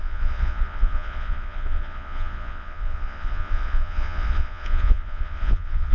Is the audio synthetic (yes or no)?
yes